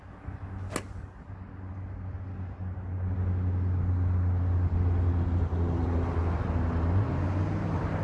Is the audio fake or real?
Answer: real